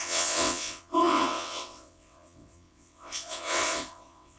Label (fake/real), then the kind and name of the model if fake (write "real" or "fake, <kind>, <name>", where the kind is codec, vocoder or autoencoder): fake, vocoder, WaveNeXt